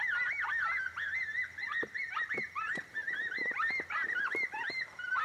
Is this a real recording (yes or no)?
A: yes